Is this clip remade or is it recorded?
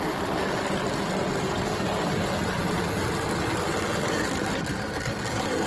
recorded